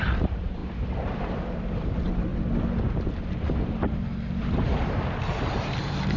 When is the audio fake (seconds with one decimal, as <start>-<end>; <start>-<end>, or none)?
0.0-2.3; 4.4-6.2